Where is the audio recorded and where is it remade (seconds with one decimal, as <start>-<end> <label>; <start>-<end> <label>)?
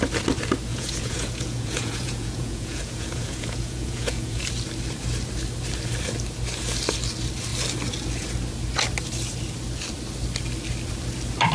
0.0-0.7 recorded; 0.7-4.4 remade; 4.4-11.5 recorded